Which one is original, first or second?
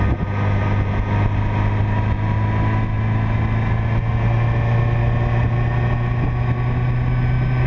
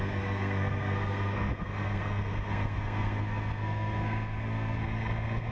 first